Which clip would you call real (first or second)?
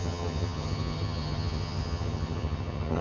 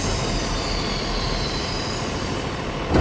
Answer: second